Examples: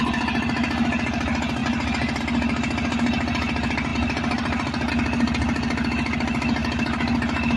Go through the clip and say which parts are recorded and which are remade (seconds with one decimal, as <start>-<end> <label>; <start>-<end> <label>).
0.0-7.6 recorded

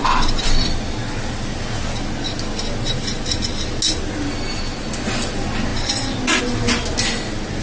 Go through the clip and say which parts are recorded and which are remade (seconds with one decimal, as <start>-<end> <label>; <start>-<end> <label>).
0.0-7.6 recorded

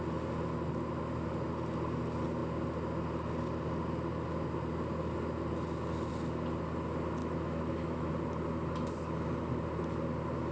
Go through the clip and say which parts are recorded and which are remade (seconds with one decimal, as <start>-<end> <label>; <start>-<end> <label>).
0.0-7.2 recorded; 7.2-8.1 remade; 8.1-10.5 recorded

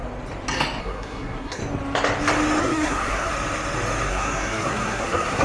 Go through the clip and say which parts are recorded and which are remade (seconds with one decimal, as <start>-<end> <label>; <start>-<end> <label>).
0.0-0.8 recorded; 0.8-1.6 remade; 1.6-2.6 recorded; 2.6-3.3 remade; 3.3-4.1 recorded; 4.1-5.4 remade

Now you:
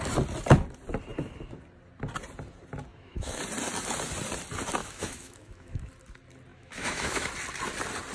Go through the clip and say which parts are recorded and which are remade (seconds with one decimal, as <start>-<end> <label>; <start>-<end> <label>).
0.0-2.9 recorded; 2.9-3.4 remade; 3.4-4.8 recorded; 4.8-5.9 remade; 5.9-6.5 recorded; 6.5-7.3 remade; 7.3-8.1 recorded

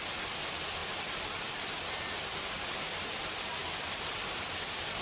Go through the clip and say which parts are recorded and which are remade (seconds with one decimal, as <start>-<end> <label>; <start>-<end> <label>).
0.0-5.0 recorded

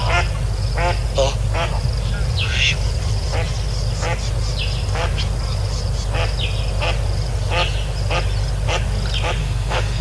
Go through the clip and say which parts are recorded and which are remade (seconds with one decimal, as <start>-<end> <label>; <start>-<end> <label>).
0.0-9.4 recorded; 9.4-10.0 remade